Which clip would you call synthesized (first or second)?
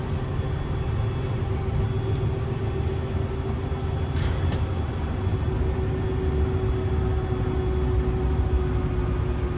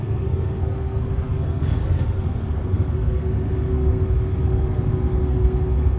second